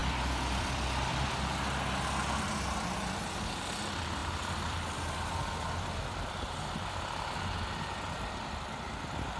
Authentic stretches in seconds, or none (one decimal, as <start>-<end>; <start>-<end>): 1.3-4.2; 7.6-9.4

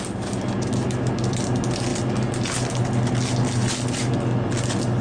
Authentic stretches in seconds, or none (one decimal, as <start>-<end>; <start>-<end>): 0.0-5.0

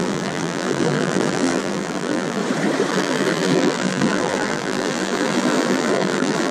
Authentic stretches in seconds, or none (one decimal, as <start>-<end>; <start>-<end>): 2.4-2.9

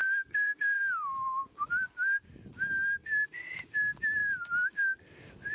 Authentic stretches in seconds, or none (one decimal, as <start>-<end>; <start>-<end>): 0.8-5.5

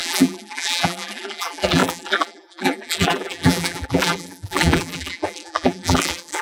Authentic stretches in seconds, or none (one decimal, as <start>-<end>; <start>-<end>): none

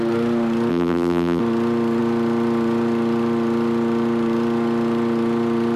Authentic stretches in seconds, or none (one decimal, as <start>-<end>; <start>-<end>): 0.0-0.7; 1.4-5.8

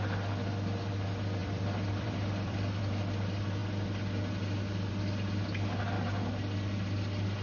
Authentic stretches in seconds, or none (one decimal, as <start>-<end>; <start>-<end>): 0.0-1.4; 2.8-7.4